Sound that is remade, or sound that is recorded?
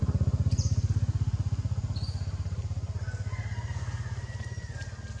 recorded